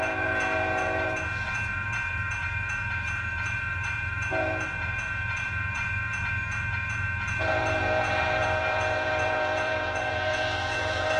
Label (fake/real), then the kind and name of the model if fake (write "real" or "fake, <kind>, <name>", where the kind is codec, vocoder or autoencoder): fake, vocoder, Vocos